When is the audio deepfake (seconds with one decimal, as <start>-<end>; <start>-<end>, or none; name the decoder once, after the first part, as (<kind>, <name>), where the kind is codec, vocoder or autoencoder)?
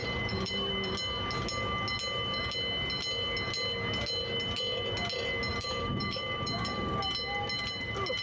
0.0-0.7 (vocoder, BigVGAN v2); 5.5-7.0